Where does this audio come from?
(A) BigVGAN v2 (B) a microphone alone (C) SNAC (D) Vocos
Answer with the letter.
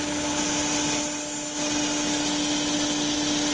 B